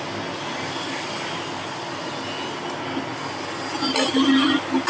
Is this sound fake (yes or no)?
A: no